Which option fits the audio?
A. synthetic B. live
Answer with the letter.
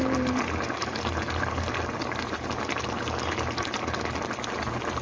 B